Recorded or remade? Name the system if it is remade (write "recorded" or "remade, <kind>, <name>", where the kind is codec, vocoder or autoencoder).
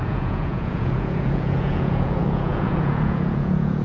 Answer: remade, vocoder, Vocos